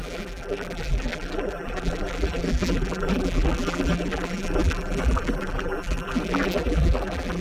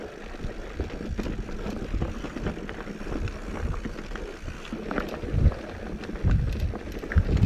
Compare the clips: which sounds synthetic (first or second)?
first